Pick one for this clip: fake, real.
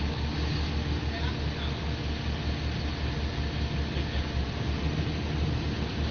real